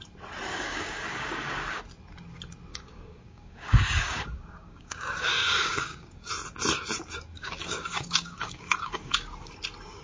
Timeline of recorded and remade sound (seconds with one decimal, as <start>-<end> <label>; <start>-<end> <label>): 0.0-0.5 recorded; 0.5-1.8 remade; 1.8-2.7 recorded; 2.7-6.3 remade; 6.3-7.3 recorded; 7.3-9.5 remade; 9.5-10.0 recorded